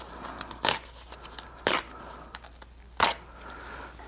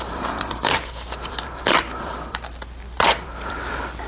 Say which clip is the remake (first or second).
second